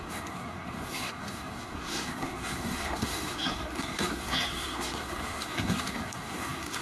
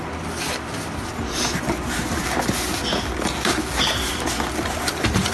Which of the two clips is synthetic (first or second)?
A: first